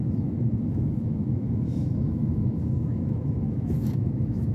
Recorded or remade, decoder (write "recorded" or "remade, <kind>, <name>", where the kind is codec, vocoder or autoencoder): remade, autoencoder, DAC-VAE